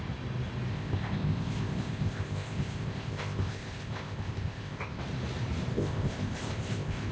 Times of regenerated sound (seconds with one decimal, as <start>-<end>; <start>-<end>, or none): 0.7-5.0; 5.7-7.1